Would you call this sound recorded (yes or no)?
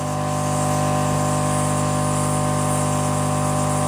yes